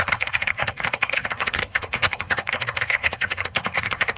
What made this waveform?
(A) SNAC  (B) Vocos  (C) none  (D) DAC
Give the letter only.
A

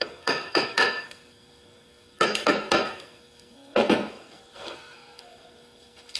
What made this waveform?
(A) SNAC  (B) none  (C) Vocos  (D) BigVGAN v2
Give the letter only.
A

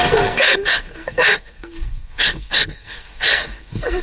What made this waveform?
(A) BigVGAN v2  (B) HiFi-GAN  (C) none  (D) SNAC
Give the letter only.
D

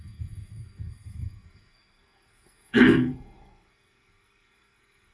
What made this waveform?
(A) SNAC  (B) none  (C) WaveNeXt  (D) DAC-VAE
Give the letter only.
A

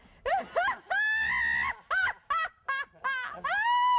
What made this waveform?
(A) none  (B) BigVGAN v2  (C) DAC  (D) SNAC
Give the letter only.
A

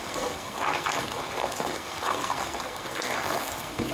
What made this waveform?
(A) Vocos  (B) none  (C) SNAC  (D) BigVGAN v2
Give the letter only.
C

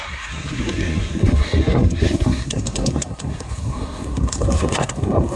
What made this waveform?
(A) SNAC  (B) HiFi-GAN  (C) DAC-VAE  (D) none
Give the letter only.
A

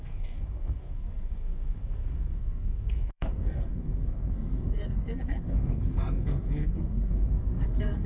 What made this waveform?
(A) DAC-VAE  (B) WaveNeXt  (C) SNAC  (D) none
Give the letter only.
C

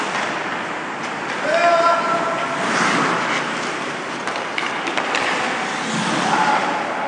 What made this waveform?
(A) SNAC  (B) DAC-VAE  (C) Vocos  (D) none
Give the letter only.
D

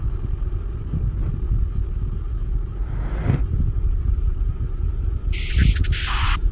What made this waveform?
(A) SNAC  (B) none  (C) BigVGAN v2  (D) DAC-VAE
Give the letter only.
B